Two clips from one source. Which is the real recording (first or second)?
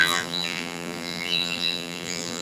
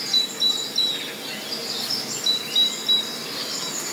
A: second